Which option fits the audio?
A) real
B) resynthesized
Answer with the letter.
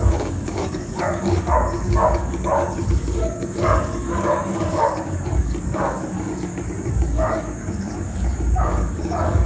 B